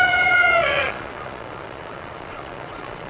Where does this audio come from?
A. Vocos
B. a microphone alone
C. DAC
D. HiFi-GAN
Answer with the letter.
A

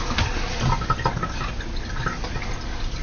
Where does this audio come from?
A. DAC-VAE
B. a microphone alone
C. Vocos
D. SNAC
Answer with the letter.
B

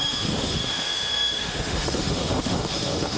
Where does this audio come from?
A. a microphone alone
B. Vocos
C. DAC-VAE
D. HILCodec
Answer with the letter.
C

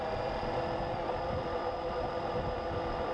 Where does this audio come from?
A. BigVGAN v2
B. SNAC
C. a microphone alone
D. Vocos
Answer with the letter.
A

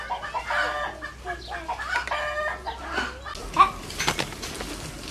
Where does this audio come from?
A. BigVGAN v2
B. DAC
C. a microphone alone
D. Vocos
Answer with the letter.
C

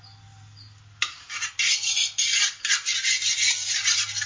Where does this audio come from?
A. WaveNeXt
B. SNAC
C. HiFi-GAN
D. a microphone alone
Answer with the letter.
D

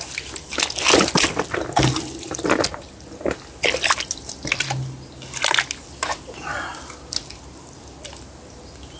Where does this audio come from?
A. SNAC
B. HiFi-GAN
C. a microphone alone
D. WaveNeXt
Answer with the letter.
C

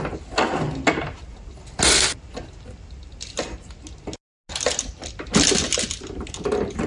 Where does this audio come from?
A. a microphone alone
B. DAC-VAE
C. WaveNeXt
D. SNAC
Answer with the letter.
A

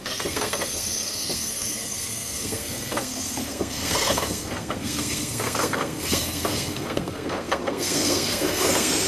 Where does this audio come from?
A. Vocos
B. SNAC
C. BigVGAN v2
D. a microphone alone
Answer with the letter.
B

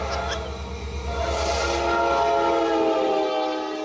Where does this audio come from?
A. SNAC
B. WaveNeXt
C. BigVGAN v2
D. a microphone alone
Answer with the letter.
D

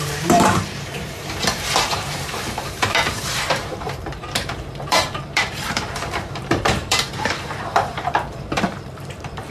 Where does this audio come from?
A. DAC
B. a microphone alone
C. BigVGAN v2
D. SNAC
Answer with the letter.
C